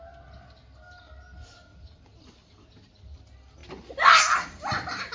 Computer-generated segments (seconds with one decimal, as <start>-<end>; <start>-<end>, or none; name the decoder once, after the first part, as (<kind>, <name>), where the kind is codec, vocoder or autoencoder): none